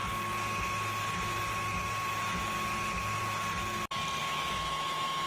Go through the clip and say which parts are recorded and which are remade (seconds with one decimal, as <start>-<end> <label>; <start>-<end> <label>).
0.0-4.2 recorded; 4.2-5.3 remade